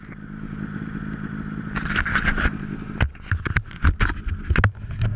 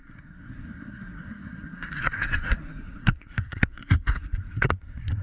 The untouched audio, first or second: first